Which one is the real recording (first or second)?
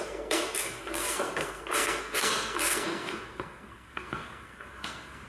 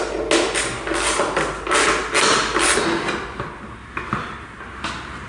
second